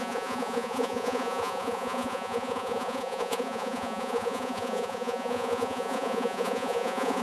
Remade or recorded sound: remade